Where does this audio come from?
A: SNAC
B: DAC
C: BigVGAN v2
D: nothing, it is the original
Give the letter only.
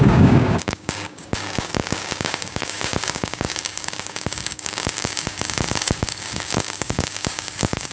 B